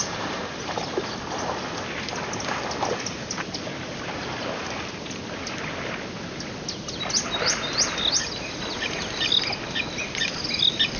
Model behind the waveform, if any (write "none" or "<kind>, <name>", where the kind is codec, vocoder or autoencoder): none